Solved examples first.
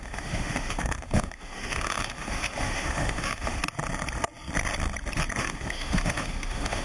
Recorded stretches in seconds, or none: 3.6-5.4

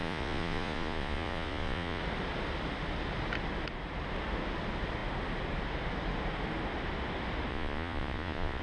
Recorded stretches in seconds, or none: 2.0-7.5

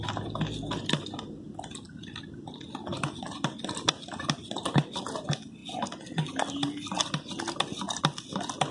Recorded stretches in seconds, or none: 0.0-8.7

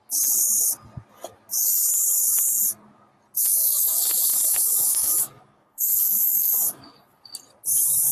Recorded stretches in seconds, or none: 0.0-3.5; 6.8-8.1

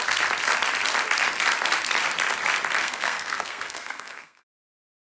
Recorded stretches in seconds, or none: 0.0-2.8

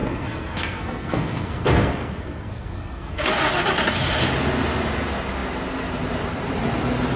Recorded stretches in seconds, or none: 3.4-7.2

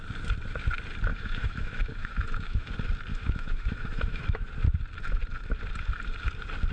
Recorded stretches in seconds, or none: 0.0-1.1; 2.7-3.1; 4.5-6.7

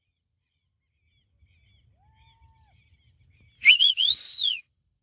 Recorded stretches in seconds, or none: 0.7-3.7